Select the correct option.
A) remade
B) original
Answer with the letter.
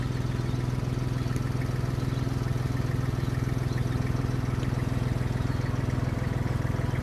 B